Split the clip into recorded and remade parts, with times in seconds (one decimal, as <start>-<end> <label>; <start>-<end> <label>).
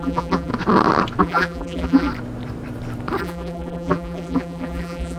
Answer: 0.0-0.5 remade; 0.5-1.2 recorded; 1.2-2.1 remade; 2.1-3.2 recorded; 3.2-5.2 remade